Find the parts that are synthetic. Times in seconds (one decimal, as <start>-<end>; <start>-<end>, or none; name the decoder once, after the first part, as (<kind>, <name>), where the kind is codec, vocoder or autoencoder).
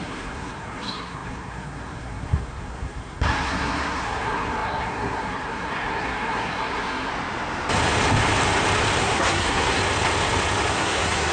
0.0-7.1 (codec, SNAC); 9.0-9.8; 10.7-11.3